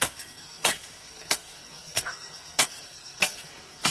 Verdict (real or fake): fake